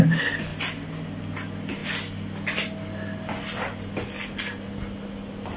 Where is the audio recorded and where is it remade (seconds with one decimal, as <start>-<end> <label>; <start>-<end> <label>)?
0.0-5.6 recorded